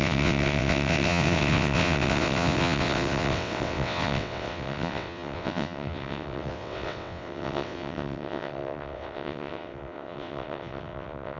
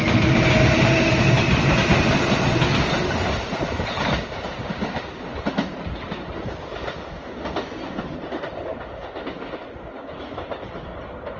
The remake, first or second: first